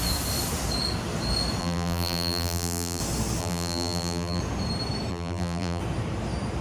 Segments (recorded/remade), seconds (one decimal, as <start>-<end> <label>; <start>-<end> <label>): 0.0-1.6 recorded; 1.6-3.0 remade; 3.0-3.4 recorded; 3.4-4.4 remade; 4.4-5.1 recorded; 5.1-5.8 remade; 5.8-6.6 recorded